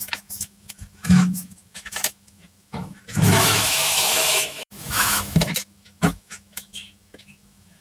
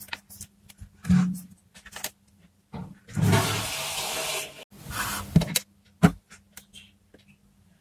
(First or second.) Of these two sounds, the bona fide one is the second